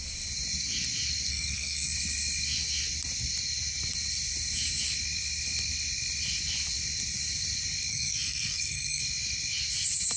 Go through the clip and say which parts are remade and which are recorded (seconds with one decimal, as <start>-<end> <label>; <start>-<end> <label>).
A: 0.0-1.3 recorded; 1.3-1.9 remade; 1.9-7.9 recorded; 7.9-9.0 remade; 9.0-10.2 recorded